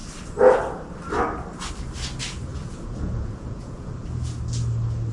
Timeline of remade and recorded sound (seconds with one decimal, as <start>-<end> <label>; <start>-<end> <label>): 0.0-2.5 recorded; 2.5-3.9 remade; 3.9-5.1 recorded